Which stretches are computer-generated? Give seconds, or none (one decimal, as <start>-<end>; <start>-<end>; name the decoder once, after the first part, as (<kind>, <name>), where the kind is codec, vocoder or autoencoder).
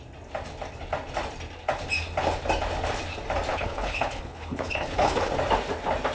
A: 3.5-5.3 (codec, HILCodec)